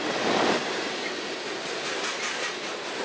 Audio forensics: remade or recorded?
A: recorded